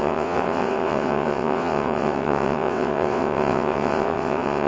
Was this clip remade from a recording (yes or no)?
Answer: yes